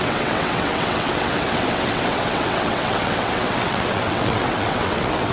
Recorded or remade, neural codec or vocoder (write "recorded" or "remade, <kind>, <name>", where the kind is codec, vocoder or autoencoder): remade, vocoder, WaveNeXt